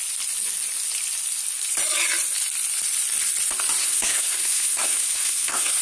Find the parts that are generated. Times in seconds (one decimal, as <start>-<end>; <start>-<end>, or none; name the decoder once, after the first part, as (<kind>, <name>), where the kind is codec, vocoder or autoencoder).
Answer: 3.8-5.8 (codec, SNAC)